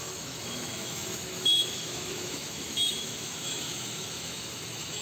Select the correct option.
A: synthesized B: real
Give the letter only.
A